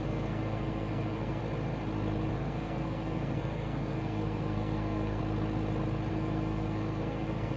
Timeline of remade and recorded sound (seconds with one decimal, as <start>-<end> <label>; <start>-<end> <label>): 0.0-1.4 remade; 1.4-2.3 recorded; 2.3-5.2 remade; 5.2-6.1 recorded; 6.1-7.6 remade